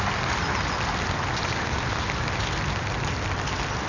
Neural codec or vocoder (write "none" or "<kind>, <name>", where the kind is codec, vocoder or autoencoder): none